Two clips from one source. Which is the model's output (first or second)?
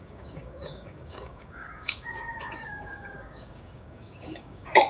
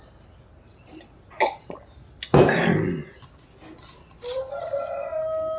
first